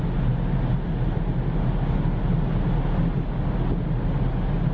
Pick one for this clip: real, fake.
real